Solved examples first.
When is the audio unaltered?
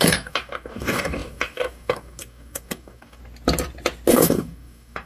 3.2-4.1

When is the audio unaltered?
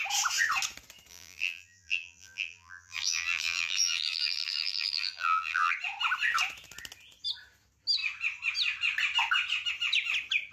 0.0-1.1; 5.7-10.5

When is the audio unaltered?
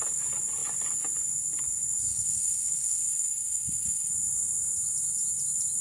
0.0-2.1; 4.1-5.8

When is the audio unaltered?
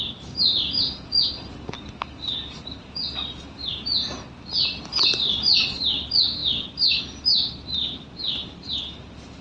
0.0-6.4; 7.0-9.4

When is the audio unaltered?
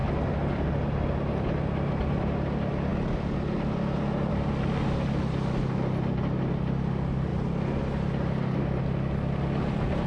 0.0-10.1